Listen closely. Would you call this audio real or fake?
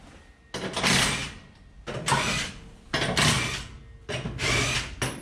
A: real